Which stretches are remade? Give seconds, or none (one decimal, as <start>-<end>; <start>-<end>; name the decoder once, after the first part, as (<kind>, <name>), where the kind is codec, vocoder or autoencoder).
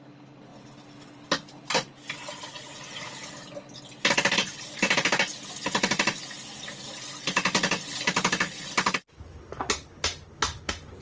none